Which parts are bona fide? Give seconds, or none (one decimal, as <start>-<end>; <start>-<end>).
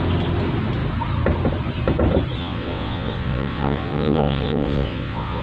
0.0-2.4